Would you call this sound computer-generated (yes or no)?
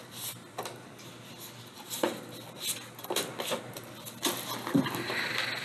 no